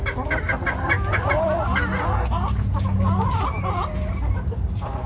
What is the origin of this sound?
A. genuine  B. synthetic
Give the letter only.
A